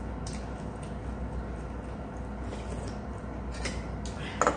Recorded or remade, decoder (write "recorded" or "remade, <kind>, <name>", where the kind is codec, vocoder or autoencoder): recorded